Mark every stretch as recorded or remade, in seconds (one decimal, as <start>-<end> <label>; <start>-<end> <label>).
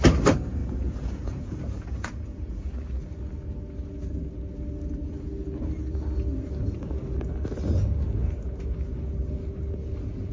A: 0.0-0.6 recorded; 0.6-2.7 remade; 2.7-10.3 recorded